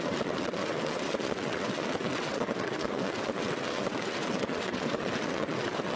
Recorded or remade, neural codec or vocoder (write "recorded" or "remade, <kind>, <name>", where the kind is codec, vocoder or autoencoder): remade, vocoder, WaveNeXt